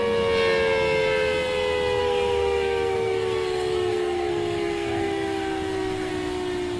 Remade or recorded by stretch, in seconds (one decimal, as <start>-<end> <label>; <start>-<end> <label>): 0.0-2.0 recorded; 2.0-6.1 remade; 6.1-6.8 recorded

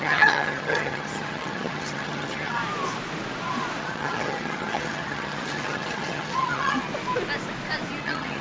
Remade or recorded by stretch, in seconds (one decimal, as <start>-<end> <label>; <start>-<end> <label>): 0.0-2.6 remade; 2.6-3.8 recorded; 3.8-6.9 remade; 6.9-8.0 recorded; 8.0-8.4 remade

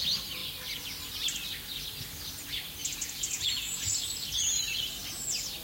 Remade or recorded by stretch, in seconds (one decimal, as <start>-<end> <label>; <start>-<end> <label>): 0.0-2.8 recorded; 2.8-4.6 remade; 4.6-5.6 recorded

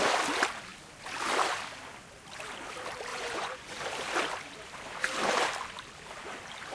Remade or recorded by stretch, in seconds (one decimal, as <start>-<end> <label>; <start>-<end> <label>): 0.0-3.1 recorded; 3.1-3.8 remade; 3.8-6.7 recorded